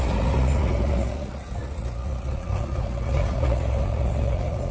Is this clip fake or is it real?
fake